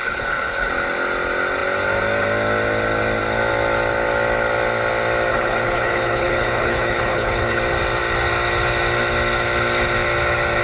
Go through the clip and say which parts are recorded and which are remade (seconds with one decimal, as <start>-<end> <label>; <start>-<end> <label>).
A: 0.0-0.7 remade; 0.7-5.3 recorded; 5.3-7.6 remade; 7.6-10.6 recorded